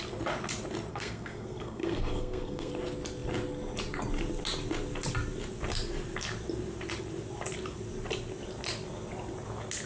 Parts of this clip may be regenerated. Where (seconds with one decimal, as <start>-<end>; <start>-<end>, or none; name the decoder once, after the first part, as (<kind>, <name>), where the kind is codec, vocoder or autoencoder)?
0.9-2.7 (codec, SNAC)

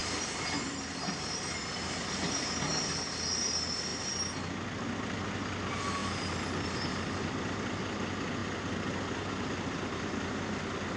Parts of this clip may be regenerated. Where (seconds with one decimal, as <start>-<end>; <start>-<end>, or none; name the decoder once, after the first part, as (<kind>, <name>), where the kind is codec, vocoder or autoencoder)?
0.0-2.4 (vocoder, BigVGAN v2); 6.0-7.8

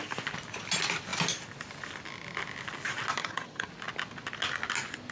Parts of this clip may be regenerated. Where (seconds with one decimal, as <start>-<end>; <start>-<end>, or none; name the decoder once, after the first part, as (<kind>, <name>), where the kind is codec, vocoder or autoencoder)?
3.2-3.7 (vocoder, HiFi-GAN)

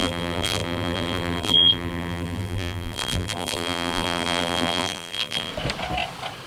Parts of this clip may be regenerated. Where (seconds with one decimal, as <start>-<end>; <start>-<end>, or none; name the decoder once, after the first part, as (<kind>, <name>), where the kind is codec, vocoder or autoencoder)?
0.0-5.5 (vocoder, BigVGAN v2)

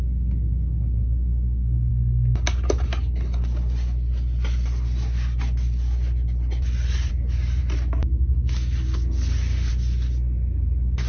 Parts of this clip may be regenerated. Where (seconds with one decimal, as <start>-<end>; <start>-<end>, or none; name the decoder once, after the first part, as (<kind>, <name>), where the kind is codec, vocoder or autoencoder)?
none